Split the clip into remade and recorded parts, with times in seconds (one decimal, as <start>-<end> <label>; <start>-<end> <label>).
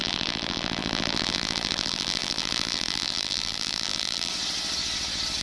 0.0-4.3 remade; 4.3-5.4 recorded